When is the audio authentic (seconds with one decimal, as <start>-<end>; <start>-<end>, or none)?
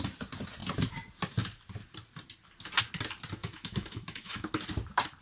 0.0-3.4; 4.5-5.2